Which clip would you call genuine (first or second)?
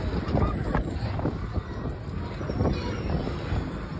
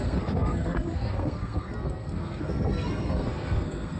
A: first